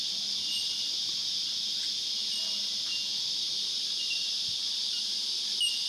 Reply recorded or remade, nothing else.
recorded